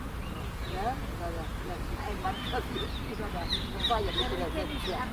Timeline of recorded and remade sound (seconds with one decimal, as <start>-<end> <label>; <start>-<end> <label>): 0.0-5.1 recorded